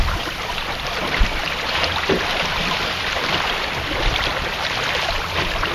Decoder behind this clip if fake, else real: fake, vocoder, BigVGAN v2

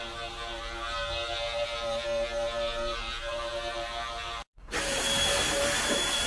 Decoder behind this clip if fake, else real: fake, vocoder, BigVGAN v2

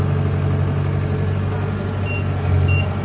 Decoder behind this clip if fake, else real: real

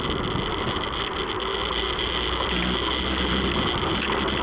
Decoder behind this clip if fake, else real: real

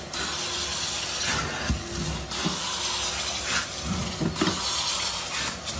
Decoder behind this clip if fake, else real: real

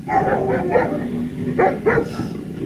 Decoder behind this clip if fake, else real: real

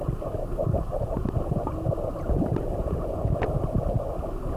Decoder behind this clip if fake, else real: real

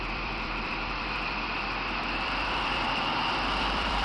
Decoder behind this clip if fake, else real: fake, vocoder, BigVGAN v2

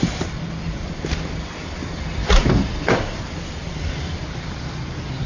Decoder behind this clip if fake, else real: fake, vocoder, BigVGAN v2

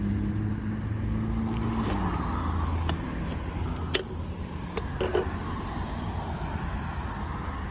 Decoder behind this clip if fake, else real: real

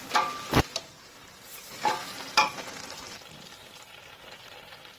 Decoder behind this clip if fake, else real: fake, vocoder, BigVGAN v2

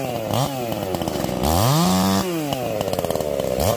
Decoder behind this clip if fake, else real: real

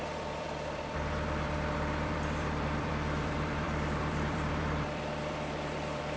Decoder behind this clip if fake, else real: fake, vocoder, BigVGAN v2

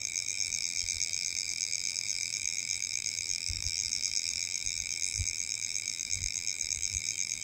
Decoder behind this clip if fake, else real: fake, vocoder, BigVGAN v2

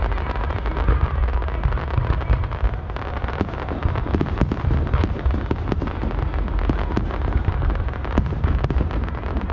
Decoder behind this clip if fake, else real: real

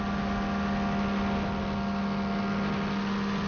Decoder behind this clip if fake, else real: real